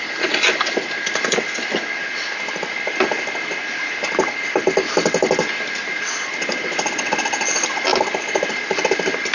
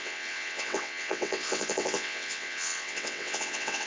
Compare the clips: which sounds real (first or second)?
first